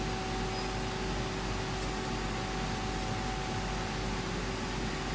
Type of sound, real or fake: real